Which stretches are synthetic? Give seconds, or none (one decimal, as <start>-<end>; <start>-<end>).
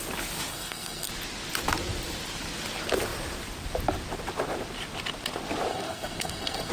0.5-1.1; 5.7-6.7